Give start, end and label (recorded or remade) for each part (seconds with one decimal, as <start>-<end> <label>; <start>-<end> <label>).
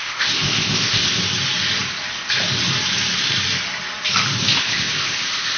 0.0-1.2 remade; 1.2-4.6 recorded; 4.6-5.6 remade